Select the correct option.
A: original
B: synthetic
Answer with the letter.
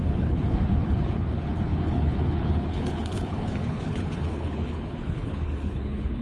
B